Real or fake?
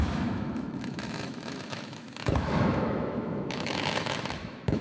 fake